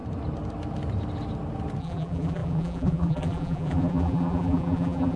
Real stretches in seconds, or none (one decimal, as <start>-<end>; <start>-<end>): 0.0-1.8